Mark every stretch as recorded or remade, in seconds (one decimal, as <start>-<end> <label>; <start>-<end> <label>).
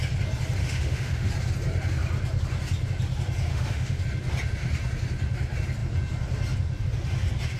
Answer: 0.0-0.6 recorded; 0.6-1.3 remade; 1.3-3.5 recorded; 3.5-4.0 remade; 4.0-7.6 recorded